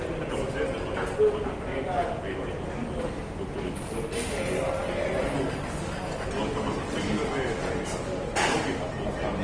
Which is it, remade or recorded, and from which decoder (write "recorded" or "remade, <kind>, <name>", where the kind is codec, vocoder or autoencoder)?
recorded